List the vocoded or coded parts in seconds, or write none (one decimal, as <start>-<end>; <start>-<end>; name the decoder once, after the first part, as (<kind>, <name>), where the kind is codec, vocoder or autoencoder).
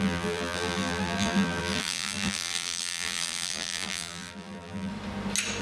0.0-4.9 (vocoder, BigVGAN v2)